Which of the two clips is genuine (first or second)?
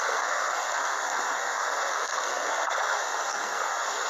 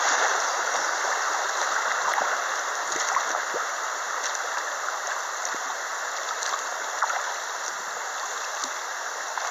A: second